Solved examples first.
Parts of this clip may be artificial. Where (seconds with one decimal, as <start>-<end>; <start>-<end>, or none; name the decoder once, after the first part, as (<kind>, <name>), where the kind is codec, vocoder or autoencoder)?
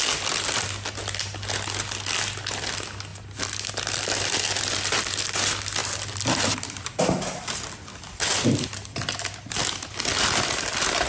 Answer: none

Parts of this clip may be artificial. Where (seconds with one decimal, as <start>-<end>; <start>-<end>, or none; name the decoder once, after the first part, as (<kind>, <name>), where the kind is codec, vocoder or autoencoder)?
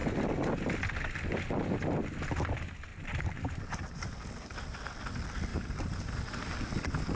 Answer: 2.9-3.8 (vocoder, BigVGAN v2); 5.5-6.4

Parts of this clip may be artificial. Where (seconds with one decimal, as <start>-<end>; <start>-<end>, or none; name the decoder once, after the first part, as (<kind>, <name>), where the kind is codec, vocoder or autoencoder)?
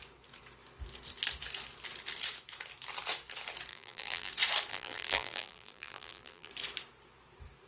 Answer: 3.7-4.3 (vocoder, BigVGAN v2); 4.7-6.5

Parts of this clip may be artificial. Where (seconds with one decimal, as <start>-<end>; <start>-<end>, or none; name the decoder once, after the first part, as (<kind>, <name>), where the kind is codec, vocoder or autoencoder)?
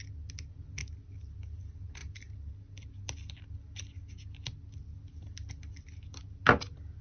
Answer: 0.8-1.6 (vocoder, BigVGAN v2)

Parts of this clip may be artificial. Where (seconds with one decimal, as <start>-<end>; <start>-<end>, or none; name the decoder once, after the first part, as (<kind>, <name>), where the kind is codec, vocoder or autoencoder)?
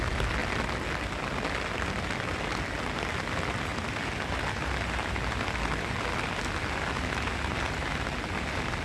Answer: 3.7-6.2 (vocoder, BigVGAN v2)